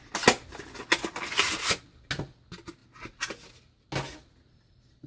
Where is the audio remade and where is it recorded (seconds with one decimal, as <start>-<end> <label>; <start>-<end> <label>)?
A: 0.0-5.1 recorded